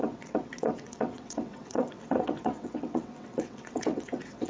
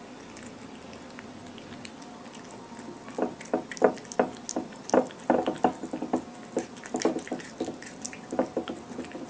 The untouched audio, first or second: second